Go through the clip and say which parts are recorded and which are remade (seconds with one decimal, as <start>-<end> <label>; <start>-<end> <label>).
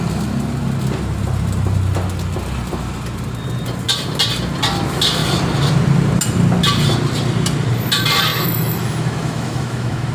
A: 0.0-8.3 recorded; 8.3-10.1 remade